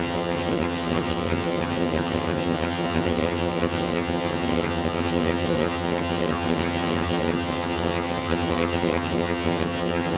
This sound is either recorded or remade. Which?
remade